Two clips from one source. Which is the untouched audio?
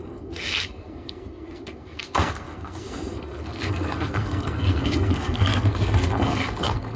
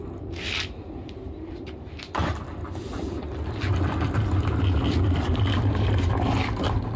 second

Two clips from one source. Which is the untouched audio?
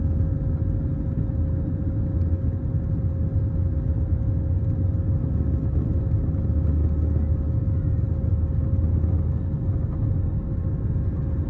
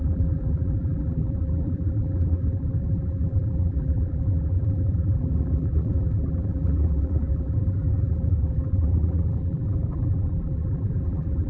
first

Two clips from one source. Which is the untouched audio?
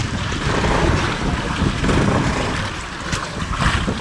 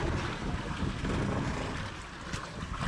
second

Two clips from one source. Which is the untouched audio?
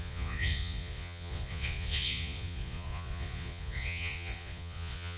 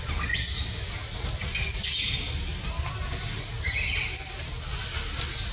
second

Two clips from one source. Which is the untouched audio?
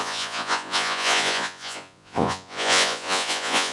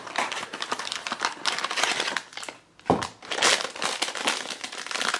second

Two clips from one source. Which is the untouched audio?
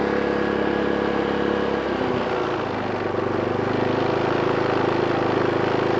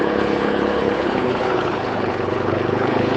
first